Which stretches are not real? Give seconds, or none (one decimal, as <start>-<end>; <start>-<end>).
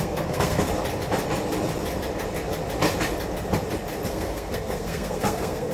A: 0.0-0.7; 4.1-5.7